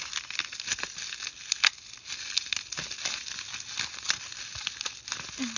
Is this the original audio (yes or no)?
yes